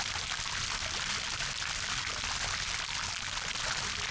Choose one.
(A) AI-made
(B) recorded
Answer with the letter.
B